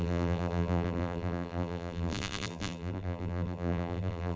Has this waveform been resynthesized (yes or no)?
yes